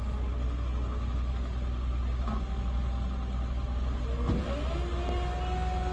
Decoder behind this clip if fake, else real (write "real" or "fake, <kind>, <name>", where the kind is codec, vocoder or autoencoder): real